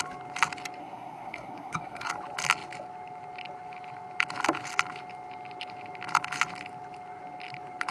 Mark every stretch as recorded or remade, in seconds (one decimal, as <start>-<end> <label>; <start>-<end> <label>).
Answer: 0.0-0.8 recorded; 0.8-2.1 remade; 2.1-7.9 recorded